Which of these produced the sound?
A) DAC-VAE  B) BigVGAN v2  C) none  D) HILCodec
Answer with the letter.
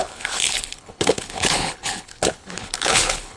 D